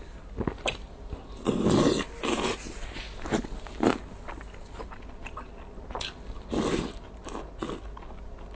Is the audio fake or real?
real